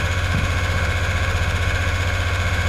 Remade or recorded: remade